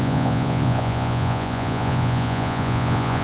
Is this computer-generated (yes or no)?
yes